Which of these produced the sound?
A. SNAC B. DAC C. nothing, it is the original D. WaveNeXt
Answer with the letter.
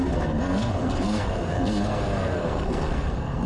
A